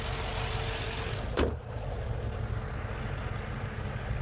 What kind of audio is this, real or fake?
real